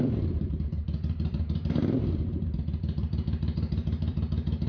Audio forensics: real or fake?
fake